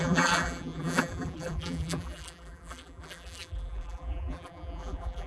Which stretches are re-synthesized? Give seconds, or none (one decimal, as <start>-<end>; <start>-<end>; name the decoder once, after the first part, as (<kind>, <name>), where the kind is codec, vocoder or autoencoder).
0.0-5.3 (vocoder, BigVGAN v2)